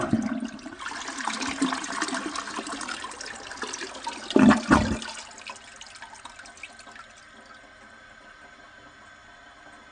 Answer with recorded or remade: recorded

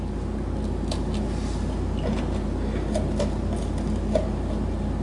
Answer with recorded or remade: recorded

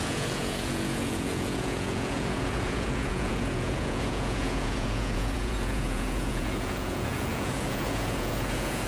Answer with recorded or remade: remade